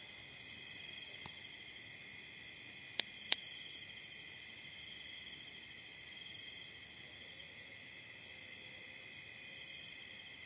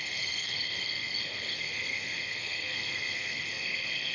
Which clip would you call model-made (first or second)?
second